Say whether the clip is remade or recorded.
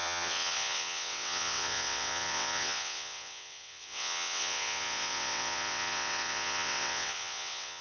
remade